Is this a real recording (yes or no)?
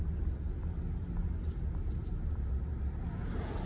yes